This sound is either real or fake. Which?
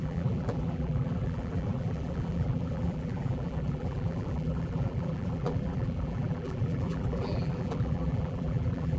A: fake